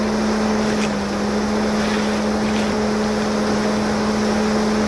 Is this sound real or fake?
real